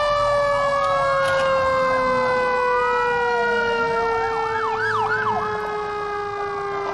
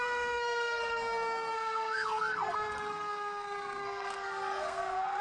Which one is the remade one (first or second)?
second